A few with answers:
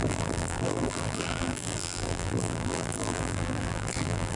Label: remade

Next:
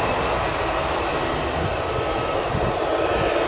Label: recorded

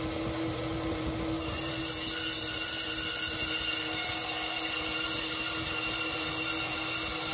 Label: recorded